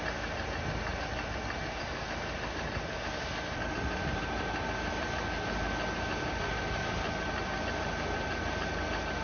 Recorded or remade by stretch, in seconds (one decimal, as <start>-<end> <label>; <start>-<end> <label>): 0.0-0.9 recorded; 0.9-2.1 remade; 2.1-9.2 recorded

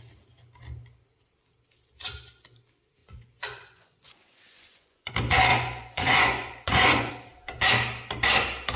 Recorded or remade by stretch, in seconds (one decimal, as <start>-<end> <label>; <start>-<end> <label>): 0.0-3.0 recorded; 3.0-5.1 remade; 5.1-5.5 recorded; 5.5-7.1 remade; 7.1-8.8 recorded

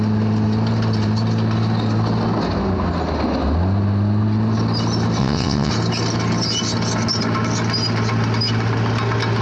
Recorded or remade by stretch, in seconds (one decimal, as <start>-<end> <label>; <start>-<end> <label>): 0.0-5.2 recorded; 5.2-5.7 remade; 5.7-9.4 recorded

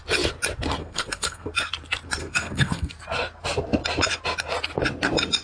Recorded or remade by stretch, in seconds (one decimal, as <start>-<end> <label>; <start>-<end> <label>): 0.0-0.8 recorded; 0.8-1.5 remade; 1.5-2.2 recorded; 2.2-2.9 remade; 2.9-5.4 recorded

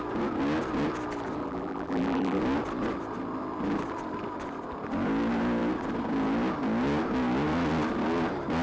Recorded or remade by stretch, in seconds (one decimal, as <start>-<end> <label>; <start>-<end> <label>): 0.0-1.4 recorded; 1.4-2.4 remade; 2.4-8.6 recorded

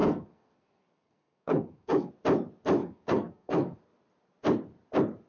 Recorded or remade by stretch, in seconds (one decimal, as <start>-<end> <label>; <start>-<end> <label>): 0.0-2.1 remade; 2.1-2.8 recorded; 2.8-3.8 remade; 3.8-5.3 recorded

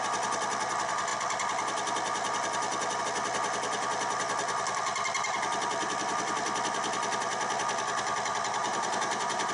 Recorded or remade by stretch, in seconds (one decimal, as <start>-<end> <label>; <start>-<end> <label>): 0.0-8.6 recorded; 8.6-9.5 remade

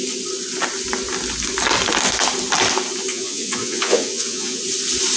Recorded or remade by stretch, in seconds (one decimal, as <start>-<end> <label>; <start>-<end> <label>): 0.0-3.1 recorded; 3.1-4.6 remade; 4.6-5.2 recorded